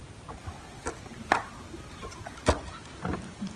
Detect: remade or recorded recorded